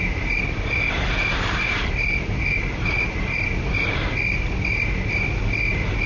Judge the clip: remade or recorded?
recorded